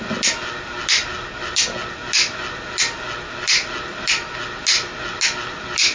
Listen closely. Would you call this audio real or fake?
real